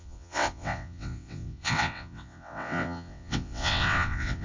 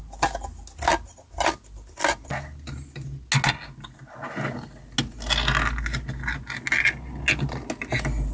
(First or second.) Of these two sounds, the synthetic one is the first